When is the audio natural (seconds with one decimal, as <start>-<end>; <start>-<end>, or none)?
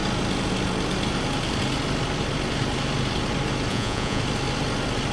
0.0-3.7; 4.2-5.1